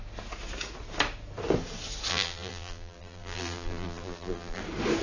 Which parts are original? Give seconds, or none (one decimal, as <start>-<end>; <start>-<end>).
0.0-2.1; 4.6-5.0